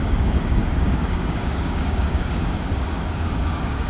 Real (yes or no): no